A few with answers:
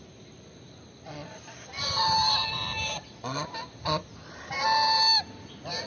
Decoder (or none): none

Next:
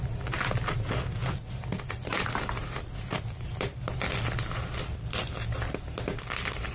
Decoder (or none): none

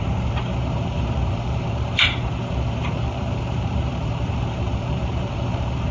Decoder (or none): vocoder, BigVGAN v2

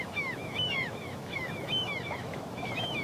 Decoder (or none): autoencoder, DAC-VAE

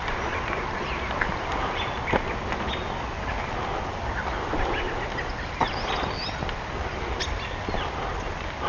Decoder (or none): none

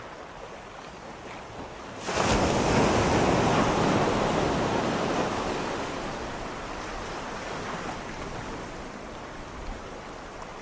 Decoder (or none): none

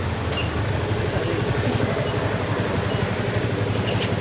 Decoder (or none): none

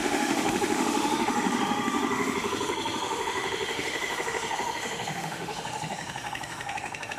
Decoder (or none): autoencoder, DAC-VAE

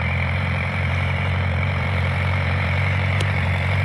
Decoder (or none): vocoder, BigVGAN v2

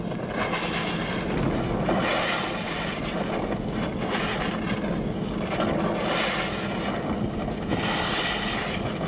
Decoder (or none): none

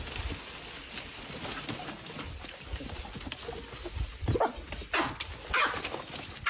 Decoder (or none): none